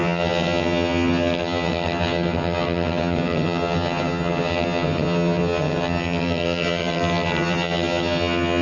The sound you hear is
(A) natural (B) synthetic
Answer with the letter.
B